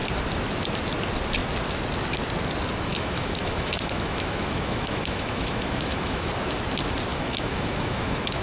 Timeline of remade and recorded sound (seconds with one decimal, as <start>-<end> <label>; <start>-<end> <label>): 0.0-2.9 recorded; 2.9-6.3 remade; 6.3-7.1 recorded; 7.1-8.4 remade